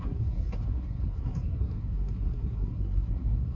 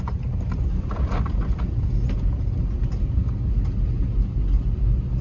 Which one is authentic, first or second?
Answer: second